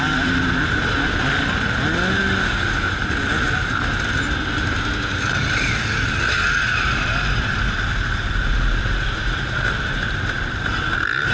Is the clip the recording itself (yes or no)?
yes